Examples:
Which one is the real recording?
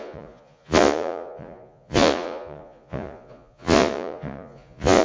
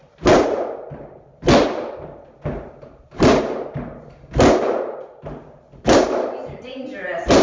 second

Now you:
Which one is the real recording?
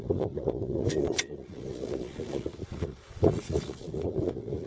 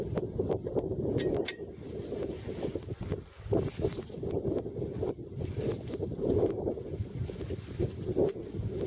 second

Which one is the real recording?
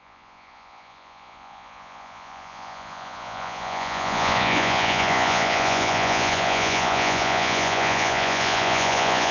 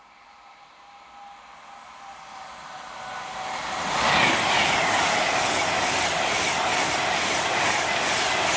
second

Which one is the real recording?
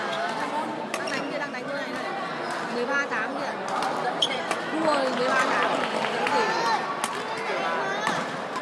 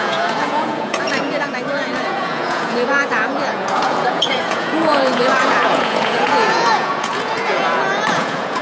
first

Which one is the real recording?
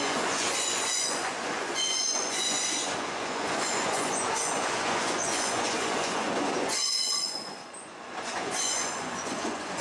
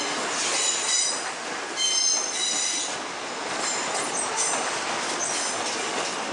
second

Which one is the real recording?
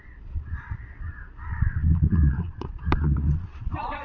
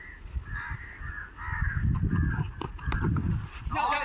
second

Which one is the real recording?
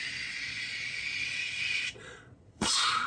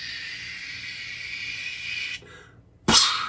second